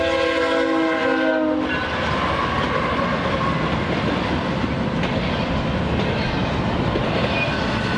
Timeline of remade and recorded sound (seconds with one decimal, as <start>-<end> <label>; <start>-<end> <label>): 0.0-8.0 recorded